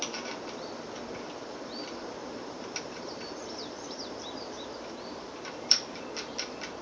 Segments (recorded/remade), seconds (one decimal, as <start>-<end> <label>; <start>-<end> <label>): 0.0-2.2 recorded; 2.2-6.0 remade; 6.0-6.8 recorded